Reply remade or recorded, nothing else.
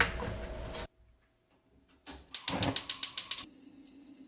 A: recorded